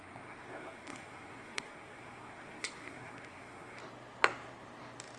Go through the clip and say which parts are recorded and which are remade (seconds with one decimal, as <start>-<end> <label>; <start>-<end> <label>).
0.0-3.8 remade; 3.8-5.2 recorded